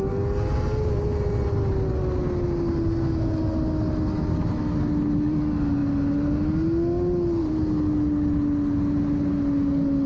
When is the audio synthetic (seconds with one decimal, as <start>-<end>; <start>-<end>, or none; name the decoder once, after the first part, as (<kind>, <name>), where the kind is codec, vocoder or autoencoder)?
none